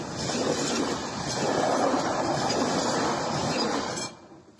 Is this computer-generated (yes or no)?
no